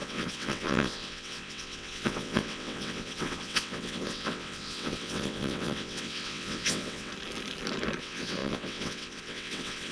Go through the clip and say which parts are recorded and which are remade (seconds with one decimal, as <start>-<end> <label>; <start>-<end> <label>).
0.0-7.1 remade; 7.1-8.0 recorded; 8.0-9.9 remade